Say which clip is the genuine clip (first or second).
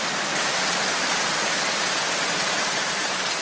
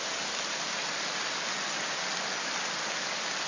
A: second